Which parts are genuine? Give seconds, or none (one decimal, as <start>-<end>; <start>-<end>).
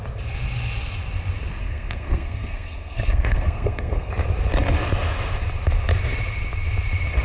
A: 0.0-1.6; 4.1-7.2